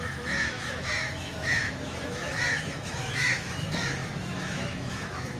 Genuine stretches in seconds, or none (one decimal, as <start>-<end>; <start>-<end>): none